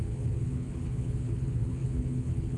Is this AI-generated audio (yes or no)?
yes